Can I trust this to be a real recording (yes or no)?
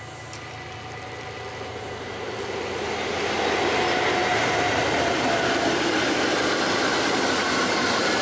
yes